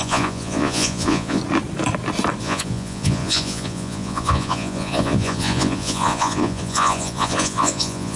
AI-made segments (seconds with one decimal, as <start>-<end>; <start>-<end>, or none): 0.0-1.4; 2.4-8.2